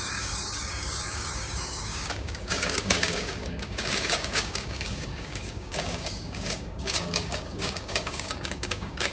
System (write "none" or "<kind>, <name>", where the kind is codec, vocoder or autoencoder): codec, DAC